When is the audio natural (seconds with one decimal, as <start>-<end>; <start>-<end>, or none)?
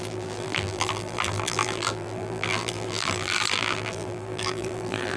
none